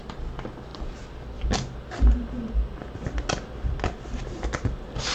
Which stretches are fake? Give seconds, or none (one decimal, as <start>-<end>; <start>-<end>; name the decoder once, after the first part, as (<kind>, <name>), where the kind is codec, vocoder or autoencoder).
none